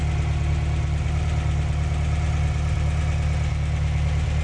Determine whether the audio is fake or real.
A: real